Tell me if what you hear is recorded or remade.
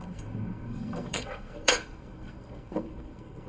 remade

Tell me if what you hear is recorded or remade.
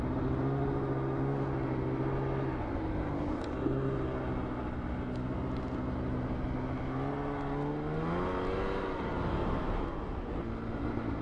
recorded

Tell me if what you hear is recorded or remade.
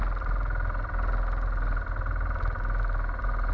recorded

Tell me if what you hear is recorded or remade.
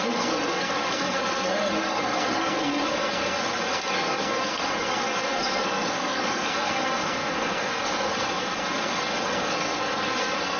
remade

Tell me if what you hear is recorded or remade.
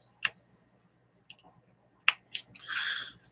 recorded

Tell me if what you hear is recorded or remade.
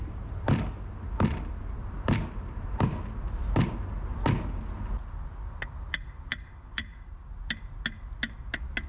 recorded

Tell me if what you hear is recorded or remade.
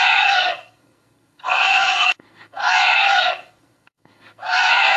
remade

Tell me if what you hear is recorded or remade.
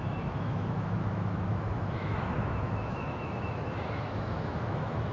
remade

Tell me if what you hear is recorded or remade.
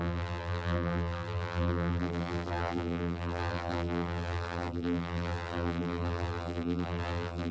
remade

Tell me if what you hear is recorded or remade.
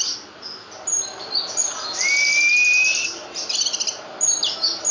recorded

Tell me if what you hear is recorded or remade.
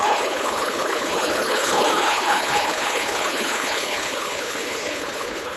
remade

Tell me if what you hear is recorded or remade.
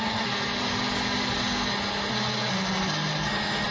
recorded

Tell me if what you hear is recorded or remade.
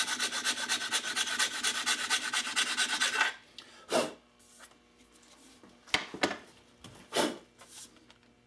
recorded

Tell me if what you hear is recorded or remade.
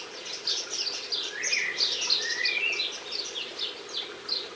recorded